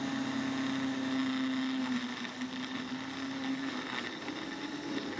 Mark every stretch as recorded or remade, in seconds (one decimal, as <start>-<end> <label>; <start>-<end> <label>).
0.0-5.2 recorded